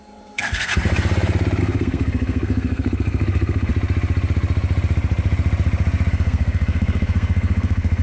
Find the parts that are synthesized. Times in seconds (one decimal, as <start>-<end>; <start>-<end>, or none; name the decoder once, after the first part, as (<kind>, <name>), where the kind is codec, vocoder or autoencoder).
0.0-0.7 (codec, SNAC); 1.6-3.7; 6.1-8.0